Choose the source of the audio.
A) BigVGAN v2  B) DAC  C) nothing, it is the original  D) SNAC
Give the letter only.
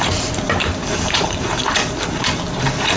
A